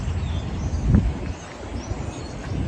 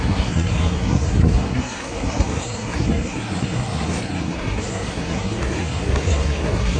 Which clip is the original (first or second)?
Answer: first